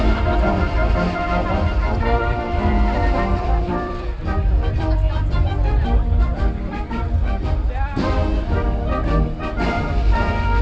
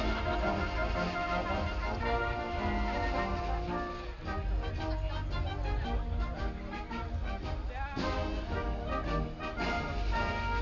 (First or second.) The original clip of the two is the second